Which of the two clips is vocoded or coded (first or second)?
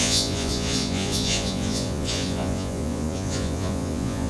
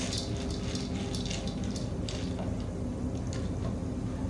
first